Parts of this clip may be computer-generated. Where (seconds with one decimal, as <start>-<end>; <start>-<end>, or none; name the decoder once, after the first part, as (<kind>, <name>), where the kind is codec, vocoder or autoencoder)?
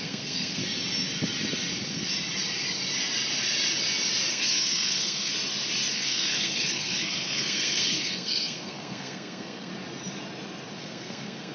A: 0.0-0.6 (codec, SNAC); 4.3-5.3; 5.9-9.7; 10.8-11.5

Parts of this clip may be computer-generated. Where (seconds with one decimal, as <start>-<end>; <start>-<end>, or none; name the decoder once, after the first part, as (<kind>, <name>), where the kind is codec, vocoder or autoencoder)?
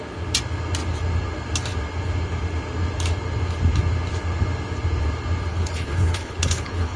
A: 5.5-7.0 (codec, HILCodec)